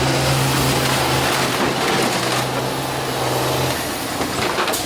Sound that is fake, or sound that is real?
real